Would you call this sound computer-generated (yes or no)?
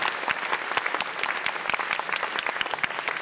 no